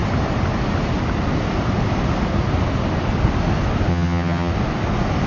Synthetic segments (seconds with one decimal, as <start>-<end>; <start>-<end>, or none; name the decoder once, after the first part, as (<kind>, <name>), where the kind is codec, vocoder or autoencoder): 3.9-4.5 (vocoder, HiFi-GAN)